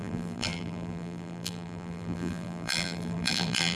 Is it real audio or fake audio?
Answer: fake